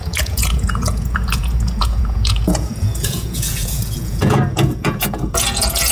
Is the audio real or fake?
fake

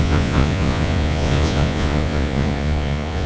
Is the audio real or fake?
fake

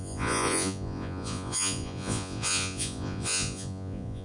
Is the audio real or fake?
fake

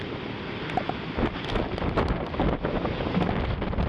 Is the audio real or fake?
real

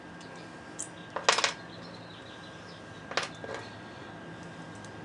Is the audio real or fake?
real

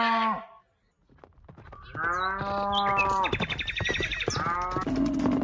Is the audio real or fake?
real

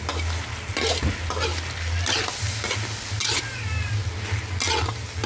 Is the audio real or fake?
real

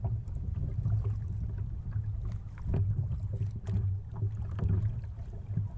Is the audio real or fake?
real